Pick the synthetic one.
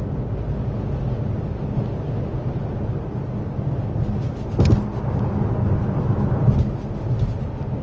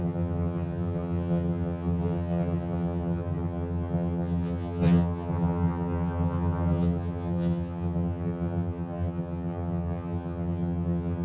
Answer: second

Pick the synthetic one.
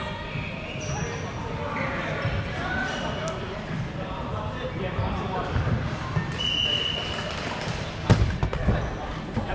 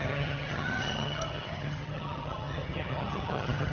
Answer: second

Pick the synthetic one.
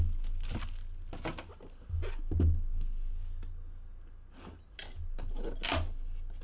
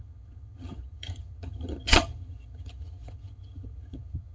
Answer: second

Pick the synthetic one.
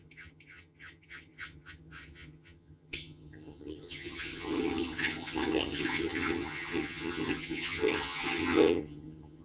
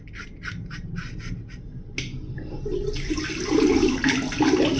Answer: first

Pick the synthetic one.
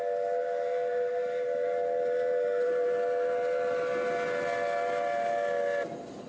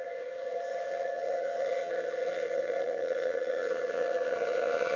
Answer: second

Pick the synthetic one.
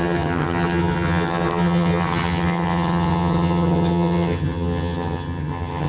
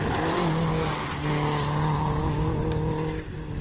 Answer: first